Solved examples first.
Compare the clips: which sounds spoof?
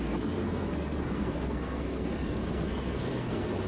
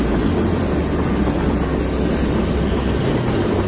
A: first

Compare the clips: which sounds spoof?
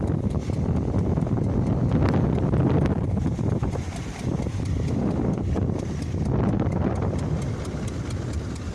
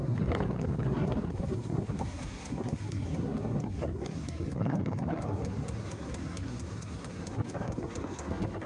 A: second